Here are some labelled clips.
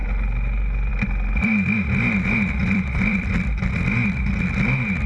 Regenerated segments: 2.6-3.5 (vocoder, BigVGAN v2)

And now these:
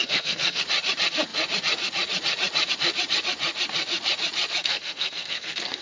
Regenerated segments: 0.0-0.6 (codec, SNAC); 4.6-5.8

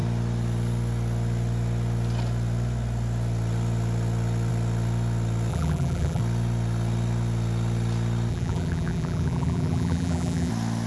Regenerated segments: 5.5-6.2 (vocoder, BigVGAN v2); 8.3-10.5